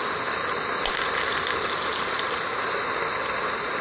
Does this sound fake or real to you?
real